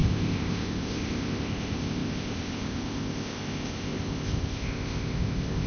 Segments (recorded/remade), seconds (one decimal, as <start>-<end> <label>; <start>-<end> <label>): 0.0-5.7 remade